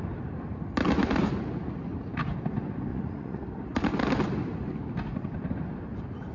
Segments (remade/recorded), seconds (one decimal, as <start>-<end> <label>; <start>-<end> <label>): 0.0-2.9 recorded; 2.9-3.4 remade; 3.4-6.3 recorded